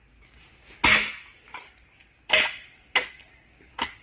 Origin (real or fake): real